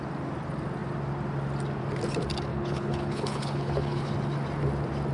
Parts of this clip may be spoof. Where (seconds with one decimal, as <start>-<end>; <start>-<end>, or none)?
2.5-4.1